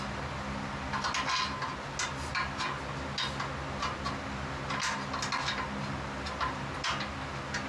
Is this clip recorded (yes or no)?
yes